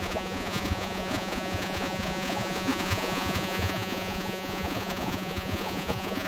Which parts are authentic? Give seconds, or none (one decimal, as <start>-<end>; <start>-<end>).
none